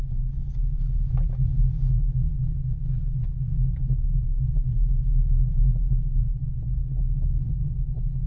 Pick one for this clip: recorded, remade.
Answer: recorded